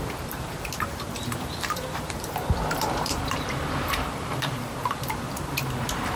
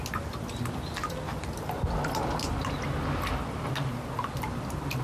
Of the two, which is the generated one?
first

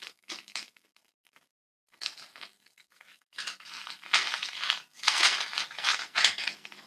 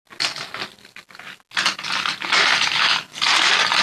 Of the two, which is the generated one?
first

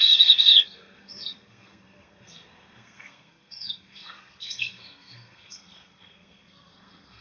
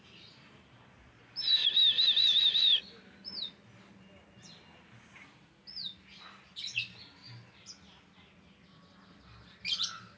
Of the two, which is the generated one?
first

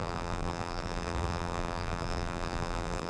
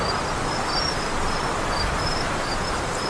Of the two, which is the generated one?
first